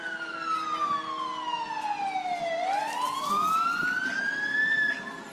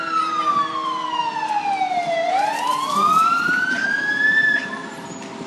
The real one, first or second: first